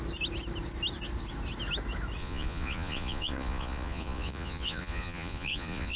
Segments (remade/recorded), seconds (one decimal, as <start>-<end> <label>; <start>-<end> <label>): 0.0-2.2 recorded; 2.2-6.0 remade